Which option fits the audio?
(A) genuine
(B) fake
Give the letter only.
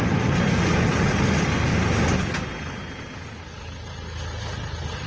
A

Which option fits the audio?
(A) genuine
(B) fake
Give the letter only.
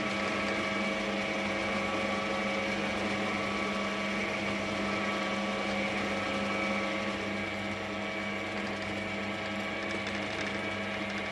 A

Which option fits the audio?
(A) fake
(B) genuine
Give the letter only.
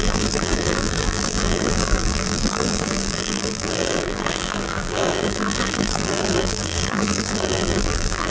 A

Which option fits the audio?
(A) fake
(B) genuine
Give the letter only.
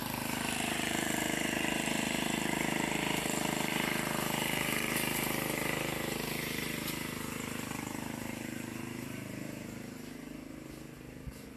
A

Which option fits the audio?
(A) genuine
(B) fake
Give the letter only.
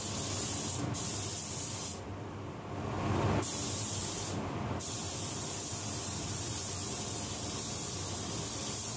A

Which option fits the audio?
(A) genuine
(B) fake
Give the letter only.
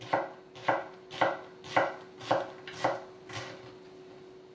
A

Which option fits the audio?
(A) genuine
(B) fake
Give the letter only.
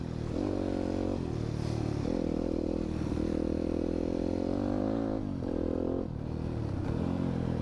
A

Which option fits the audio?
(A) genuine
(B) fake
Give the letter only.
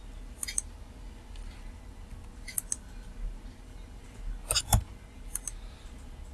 A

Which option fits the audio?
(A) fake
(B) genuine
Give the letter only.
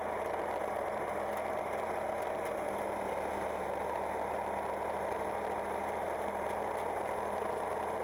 B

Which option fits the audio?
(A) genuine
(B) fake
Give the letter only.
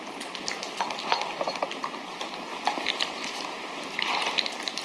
A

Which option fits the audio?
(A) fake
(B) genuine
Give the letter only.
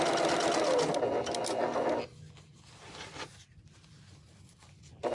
B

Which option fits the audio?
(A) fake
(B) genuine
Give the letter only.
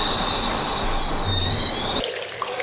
B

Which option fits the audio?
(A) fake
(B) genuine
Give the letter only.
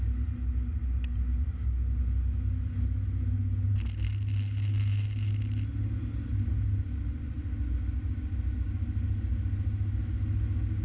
B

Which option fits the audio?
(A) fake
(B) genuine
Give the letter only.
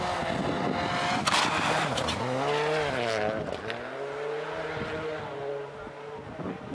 B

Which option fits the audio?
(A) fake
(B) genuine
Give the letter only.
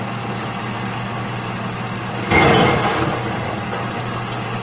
B